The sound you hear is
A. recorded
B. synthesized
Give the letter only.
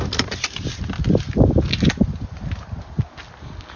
A